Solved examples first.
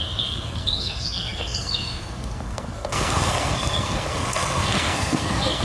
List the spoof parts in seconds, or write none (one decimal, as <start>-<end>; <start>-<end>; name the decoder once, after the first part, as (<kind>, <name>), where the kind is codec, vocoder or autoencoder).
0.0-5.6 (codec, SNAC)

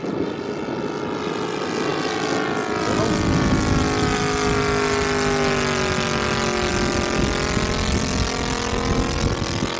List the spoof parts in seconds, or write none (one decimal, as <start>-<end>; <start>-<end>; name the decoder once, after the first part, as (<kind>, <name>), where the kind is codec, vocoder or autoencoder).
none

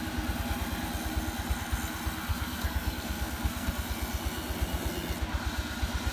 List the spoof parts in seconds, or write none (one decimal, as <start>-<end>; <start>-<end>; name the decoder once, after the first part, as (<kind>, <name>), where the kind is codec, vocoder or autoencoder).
2.3-3.7 (codec, SNAC)

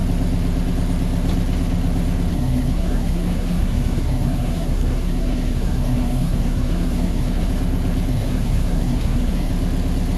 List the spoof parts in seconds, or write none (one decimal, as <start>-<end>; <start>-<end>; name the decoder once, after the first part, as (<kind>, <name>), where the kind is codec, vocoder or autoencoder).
2.3-7.5 (codec, SNAC); 8.1-9.5

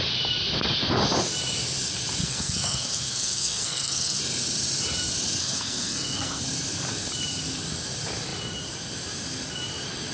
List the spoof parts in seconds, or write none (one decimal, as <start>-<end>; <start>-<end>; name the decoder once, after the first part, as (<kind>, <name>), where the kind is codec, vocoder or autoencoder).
2.2-4.2 (codec, SNAC); 5.4-6.4

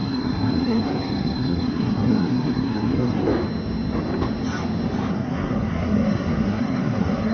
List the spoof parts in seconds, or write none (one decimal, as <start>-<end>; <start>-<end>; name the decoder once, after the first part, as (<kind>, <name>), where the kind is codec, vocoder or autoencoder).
0.0-3.3 (codec, SNAC); 5.1-7.3